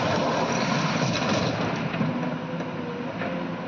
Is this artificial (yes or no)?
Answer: no